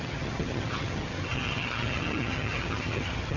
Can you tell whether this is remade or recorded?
remade